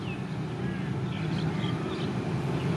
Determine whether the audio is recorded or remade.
recorded